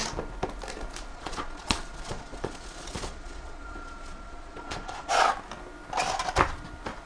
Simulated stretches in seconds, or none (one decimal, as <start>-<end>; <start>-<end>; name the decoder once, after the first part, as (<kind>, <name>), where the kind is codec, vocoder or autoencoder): 1.1-5.3 (vocoder, Vocos)